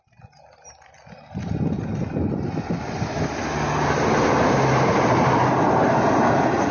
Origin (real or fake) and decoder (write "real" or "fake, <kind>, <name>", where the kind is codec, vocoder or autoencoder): real